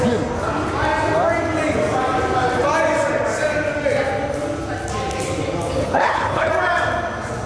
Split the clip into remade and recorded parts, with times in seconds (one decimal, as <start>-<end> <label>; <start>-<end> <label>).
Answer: 0.0-5.8 recorded; 5.8-6.5 remade; 6.5-7.5 recorded